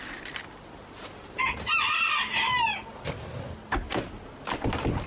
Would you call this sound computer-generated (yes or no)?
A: no